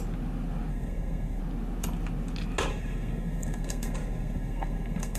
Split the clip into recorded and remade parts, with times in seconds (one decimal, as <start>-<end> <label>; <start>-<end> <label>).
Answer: 0.0-0.7 recorded; 0.7-1.4 remade; 1.4-2.7 recorded; 2.7-5.2 remade